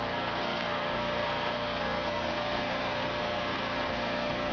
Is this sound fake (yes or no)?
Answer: yes